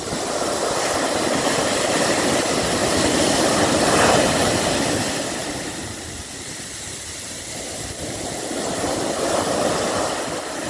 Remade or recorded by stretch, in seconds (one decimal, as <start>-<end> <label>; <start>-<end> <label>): 0.0-10.7 recorded